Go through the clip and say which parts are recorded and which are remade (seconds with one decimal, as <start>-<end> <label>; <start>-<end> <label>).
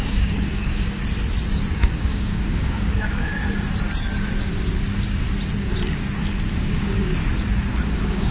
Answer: 0.0-1.0 remade; 1.0-1.7 recorded; 1.7-3.3 remade; 3.3-6.5 recorded; 6.5-7.1 remade; 7.1-7.9 recorded; 7.9-8.3 remade